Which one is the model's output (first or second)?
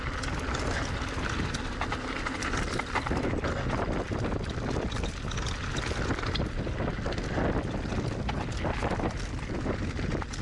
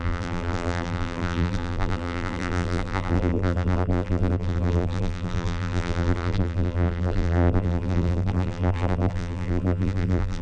second